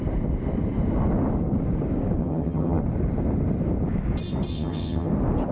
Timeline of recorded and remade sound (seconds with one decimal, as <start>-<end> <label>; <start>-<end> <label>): 0.0-2.2 recorded; 2.2-2.8 remade; 2.8-4.5 recorded; 4.5-5.1 remade; 5.1-5.5 recorded

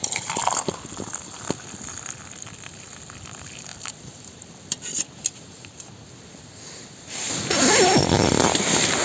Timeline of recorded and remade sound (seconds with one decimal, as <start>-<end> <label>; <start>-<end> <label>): 0.0-9.0 recorded

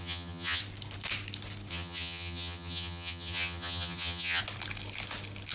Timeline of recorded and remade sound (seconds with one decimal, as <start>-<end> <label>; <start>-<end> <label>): 0.0-0.6 remade; 0.6-1.7 recorded; 1.7-4.4 remade; 4.4-5.5 recorded

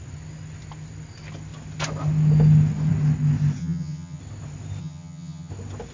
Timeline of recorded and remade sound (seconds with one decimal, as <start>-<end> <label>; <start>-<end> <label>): 0.0-3.6 recorded; 3.6-4.2 remade; 4.2-4.8 recorded; 4.8-5.5 remade; 5.5-5.9 recorded

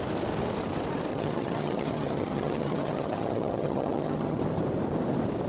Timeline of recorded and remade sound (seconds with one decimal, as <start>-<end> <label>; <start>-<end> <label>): 0.0-1.1 recorded; 1.1-4.4 remade; 4.4-5.5 recorded